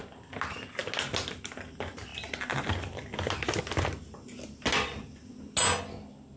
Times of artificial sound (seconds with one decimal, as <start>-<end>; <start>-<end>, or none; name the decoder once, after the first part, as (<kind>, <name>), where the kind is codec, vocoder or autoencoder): none